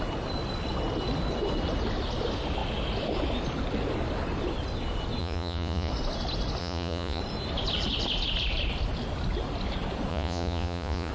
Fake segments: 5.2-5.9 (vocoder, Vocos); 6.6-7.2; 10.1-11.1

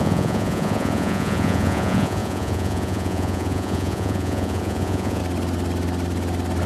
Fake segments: 0.0-5.2 (vocoder, Vocos)